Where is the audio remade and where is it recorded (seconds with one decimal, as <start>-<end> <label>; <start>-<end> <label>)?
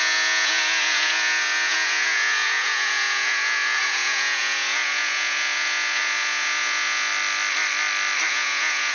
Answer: 0.0-7.1 remade; 7.1-8.3 recorded; 8.3-8.9 remade